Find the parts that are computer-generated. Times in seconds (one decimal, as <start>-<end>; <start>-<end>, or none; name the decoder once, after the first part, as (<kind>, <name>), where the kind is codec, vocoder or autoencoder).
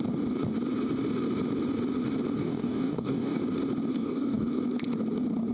2.4-3.4 (codec, DAC); 3.9-4.6